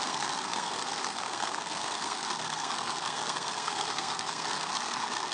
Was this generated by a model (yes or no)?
yes